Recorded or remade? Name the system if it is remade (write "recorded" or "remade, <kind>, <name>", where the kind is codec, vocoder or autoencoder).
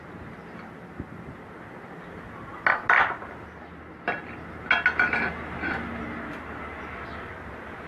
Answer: recorded